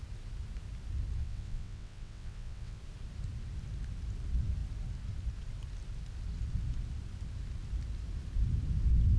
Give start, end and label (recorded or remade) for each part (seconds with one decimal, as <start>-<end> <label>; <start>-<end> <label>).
0.0-1.2 recorded; 1.2-2.8 remade; 2.8-9.2 recorded